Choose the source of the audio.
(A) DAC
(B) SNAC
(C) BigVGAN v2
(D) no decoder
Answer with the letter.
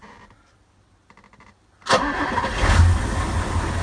C